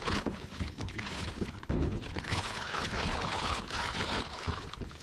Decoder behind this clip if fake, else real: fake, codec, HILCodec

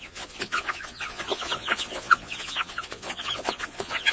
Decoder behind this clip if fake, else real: fake, vocoder, Vocos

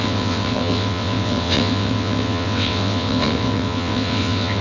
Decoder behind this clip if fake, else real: fake, vocoder, WaveNeXt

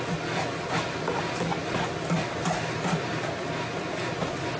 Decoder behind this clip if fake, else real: real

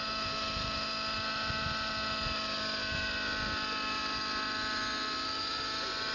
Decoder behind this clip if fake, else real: real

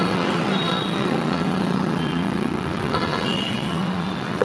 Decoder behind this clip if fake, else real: fake, vocoder, WaveNeXt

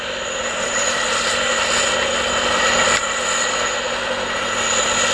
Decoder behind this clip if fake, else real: real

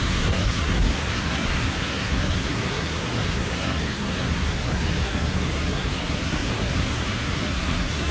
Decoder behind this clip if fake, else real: fake, codec, SNAC